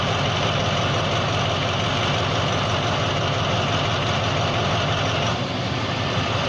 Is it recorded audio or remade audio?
recorded